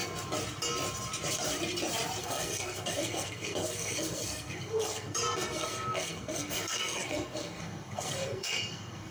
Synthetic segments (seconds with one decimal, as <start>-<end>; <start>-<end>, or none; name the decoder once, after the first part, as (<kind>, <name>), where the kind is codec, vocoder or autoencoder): 2.2-9.1 (codec, SNAC)